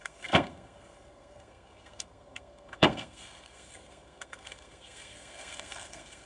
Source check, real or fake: fake